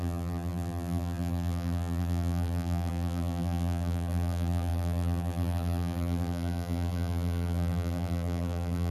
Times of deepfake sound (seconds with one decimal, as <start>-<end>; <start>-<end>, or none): 0.0-8.9